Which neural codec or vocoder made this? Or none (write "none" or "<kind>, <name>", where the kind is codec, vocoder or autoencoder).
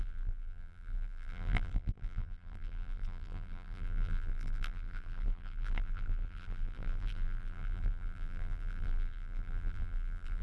vocoder, BigVGAN v2